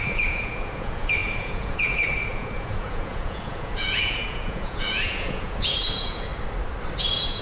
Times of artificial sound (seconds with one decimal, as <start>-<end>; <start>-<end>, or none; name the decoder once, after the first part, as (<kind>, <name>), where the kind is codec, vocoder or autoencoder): 0.0-6.3 (vocoder, Vocos); 7.0-7.4